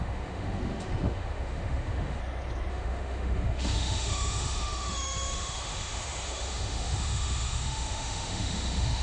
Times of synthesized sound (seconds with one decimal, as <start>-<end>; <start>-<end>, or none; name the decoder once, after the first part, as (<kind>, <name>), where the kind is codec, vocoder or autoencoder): 0.0-2.2 (autoencoder, DAC-VAE); 2.7-9.0